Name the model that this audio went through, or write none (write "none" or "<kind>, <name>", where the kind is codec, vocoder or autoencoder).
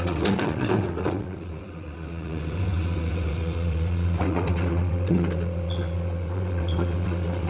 vocoder, WaveNeXt